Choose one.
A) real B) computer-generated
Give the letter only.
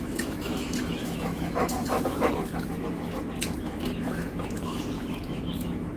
B